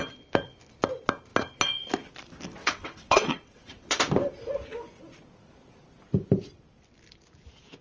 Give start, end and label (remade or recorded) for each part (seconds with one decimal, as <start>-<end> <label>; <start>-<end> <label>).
0.0-2.6 recorded; 2.6-4.0 remade; 4.0-7.8 recorded